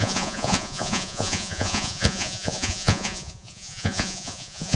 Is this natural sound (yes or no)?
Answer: no